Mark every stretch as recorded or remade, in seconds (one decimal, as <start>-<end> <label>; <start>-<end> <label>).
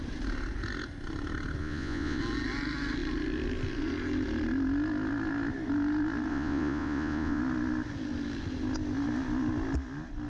0.0-1.6 recorded; 1.6-2.2 remade; 2.2-6.3 recorded; 6.3-7.4 remade; 7.4-10.3 recorded